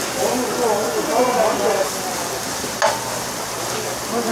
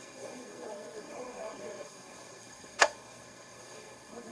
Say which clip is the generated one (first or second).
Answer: second